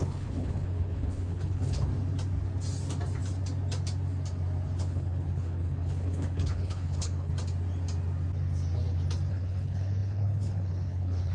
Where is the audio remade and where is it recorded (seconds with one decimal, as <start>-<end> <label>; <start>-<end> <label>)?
0.0-1.9 remade; 1.9-4.8 recorded; 4.8-7.3 remade; 7.3-9.3 recorded; 9.3-11.3 remade